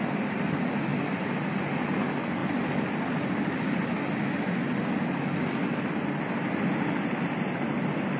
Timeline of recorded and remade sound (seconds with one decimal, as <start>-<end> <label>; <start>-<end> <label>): 0.0-8.2 recorded